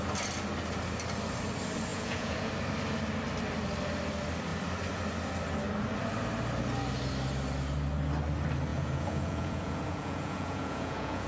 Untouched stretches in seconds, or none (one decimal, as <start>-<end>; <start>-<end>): 0.0-1.9; 2.5-8.7